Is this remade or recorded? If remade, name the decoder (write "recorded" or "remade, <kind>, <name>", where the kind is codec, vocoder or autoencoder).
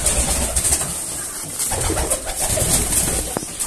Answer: recorded